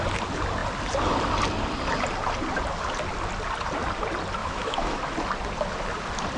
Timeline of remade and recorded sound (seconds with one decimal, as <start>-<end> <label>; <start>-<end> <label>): 0.0-4.4 recorded; 4.4-5.0 remade; 5.0-6.4 recorded